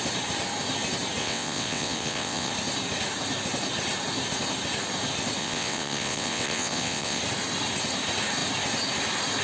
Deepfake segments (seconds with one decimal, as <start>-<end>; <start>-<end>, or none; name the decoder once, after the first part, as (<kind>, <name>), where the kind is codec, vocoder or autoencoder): 1.2-2.5 (vocoder, WaveNeXt); 5.4-7.2